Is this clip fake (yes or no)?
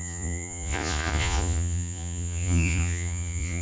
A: yes